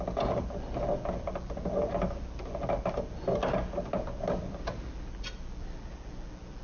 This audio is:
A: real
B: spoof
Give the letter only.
A